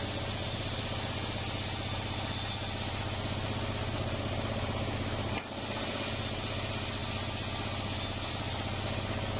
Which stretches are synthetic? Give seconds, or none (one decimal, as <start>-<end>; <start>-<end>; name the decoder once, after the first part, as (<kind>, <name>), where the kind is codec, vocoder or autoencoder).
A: none